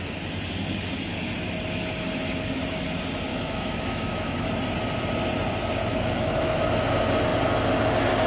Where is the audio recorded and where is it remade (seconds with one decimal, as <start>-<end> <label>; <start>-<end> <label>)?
0.0-3.3 recorded; 3.3-4.5 remade; 4.5-5.9 recorded; 5.9-6.7 remade; 6.7-8.3 recorded